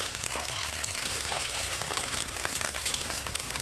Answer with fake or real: fake